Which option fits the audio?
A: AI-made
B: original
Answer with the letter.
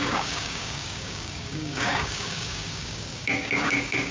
A